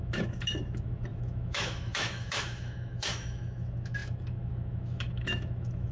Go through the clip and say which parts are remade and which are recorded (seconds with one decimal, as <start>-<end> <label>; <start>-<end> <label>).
0.0-5.9 remade